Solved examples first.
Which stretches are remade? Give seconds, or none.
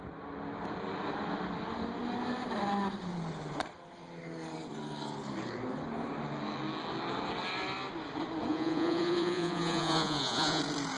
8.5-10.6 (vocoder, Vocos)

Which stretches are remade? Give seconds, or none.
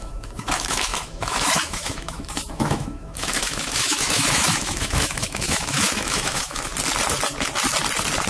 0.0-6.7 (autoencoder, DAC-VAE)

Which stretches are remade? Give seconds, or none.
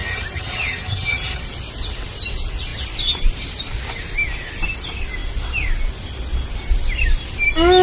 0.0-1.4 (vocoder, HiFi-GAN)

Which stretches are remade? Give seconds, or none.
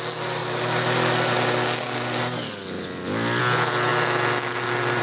none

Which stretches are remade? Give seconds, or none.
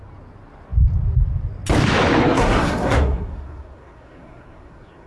2.2-5.1 (codec, SNAC)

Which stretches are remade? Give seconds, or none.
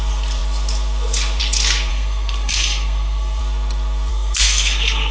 1.9-3.4 (codec, SNAC); 4.1-5.1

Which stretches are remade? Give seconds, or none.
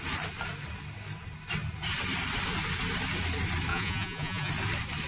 3.7-4.5 (vocoder, Vocos)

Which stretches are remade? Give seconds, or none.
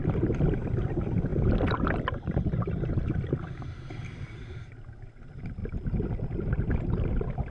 none